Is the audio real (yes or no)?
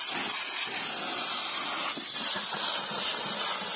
yes